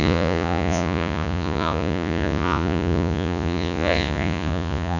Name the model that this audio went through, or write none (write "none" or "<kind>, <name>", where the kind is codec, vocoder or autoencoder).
vocoder, Vocos